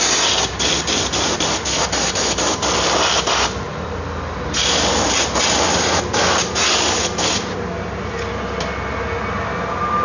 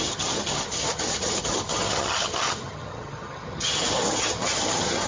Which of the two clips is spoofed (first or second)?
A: second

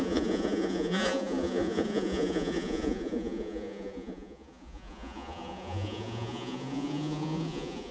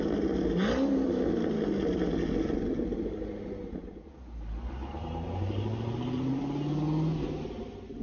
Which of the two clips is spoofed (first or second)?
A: first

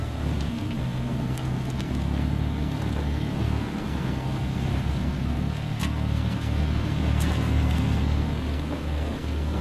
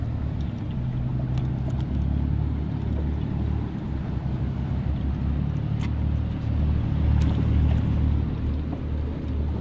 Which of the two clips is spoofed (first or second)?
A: first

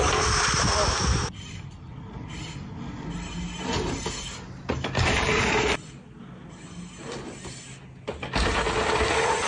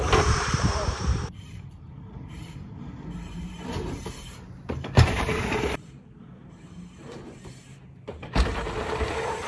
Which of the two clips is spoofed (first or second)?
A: second